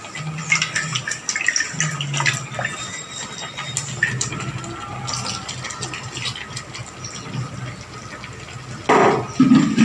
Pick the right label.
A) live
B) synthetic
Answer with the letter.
A